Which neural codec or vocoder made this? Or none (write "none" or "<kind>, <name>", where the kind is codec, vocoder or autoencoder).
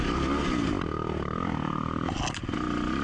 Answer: none